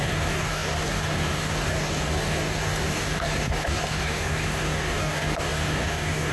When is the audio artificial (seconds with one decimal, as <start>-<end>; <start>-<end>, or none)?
0.0-6.3